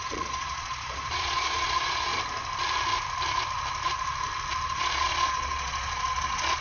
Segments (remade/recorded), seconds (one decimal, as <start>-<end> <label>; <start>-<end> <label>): 0.0-2.1 remade; 2.1-4.6 recorded; 4.6-6.6 remade